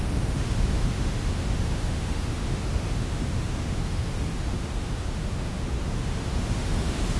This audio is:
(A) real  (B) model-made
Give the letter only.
B